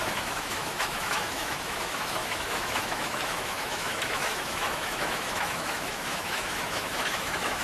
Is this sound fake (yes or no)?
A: yes